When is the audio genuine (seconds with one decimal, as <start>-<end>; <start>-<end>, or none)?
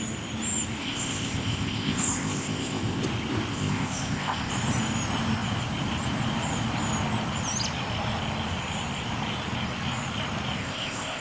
0.0-0.8; 3.0-3.5; 4.5-10.6